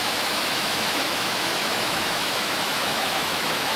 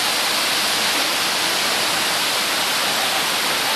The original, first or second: second